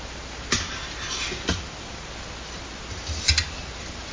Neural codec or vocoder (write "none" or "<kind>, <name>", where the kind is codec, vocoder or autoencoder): none